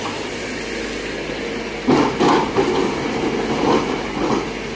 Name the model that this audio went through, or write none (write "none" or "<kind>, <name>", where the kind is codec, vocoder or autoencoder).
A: none